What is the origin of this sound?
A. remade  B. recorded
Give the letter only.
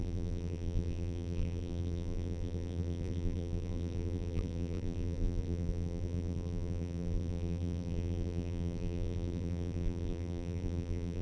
A